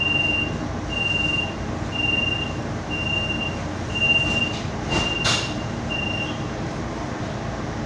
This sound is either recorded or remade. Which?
recorded